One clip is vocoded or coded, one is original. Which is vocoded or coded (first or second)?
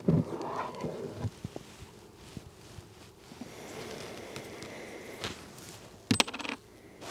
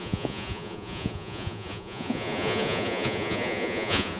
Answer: second